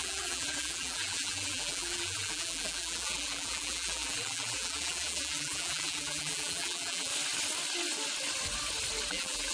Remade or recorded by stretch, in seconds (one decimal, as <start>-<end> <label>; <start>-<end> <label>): 0.0-7.1 remade; 7.1-9.1 recorded; 9.1-9.5 remade